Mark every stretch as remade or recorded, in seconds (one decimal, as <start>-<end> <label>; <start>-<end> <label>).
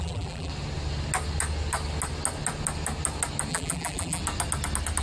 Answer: 0.0-0.5 remade; 0.5-3.5 recorded; 3.5-4.2 remade; 4.2-5.0 recorded